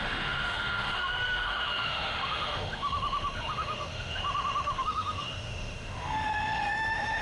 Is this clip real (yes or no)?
no